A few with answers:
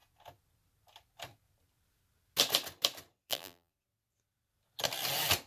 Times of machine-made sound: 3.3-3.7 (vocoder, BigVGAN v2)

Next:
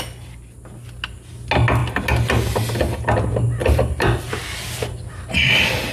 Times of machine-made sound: 3.6-4.3 (vocoder, BigVGAN v2)

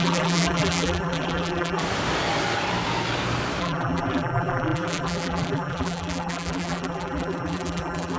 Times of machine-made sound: 0.0-1.8 (vocoder, BigVGAN v2); 3.6-8.2

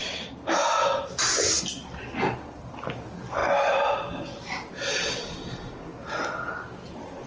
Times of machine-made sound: none

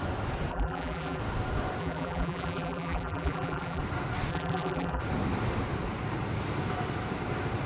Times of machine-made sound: 0.5-1.2 (vocoder, BigVGAN v2); 1.8-3.8; 4.3-5.0

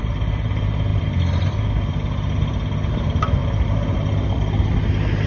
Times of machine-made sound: 0.0-0.9 (vocoder, BigVGAN v2); 2.9-3.4

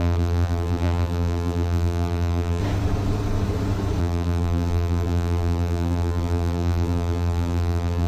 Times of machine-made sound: 0.0-2.6 (vocoder, BigVGAN v2); 4.0-8.1